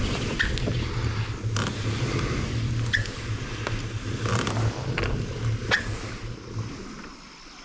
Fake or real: real